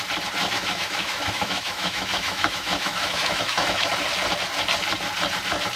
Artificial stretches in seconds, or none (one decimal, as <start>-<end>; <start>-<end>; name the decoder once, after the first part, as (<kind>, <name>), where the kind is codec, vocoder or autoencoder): 0.4-3.9 (autoencoder, DAC-VAE)